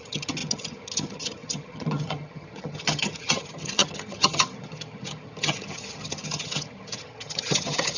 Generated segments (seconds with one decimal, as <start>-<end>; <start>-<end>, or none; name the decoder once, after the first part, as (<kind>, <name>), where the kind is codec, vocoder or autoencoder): 0.0-8.0 (vocoder, HiFi-GAN)